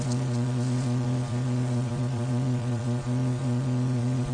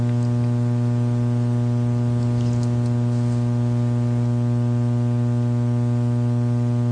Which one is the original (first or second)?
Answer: second